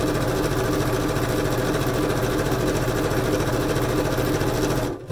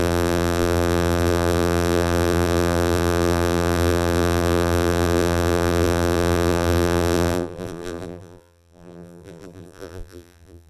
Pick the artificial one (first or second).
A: second